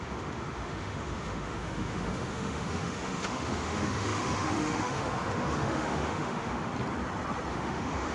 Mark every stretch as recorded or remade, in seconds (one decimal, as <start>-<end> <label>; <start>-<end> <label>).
0.0-6.7 remade; 6.7-7.5 recorded; 7.5-8.1 remade